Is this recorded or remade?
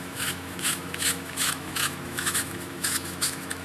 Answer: remade